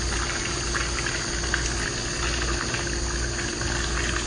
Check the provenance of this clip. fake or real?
real